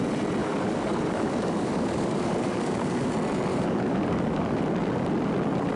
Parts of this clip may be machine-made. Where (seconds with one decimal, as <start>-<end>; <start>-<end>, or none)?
0.4-3.1; 3.5-4.6